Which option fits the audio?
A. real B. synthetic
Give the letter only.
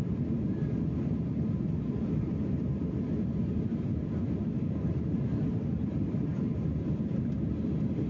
A